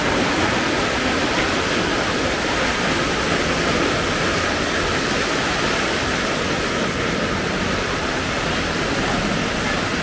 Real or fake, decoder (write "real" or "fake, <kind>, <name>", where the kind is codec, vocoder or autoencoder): real